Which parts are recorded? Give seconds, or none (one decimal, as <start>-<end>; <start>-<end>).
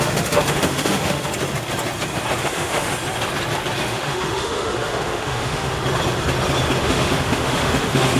1.3-2.4; 2.9-3.8; 5.8-6.8